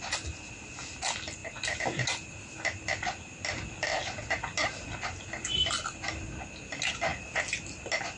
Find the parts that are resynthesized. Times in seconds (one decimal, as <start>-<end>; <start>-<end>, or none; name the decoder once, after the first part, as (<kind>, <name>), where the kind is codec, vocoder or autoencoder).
none